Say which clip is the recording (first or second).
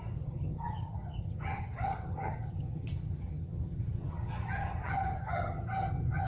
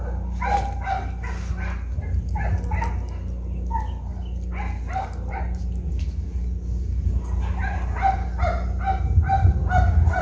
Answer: second